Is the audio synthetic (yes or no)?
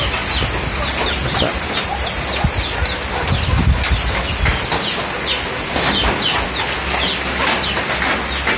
no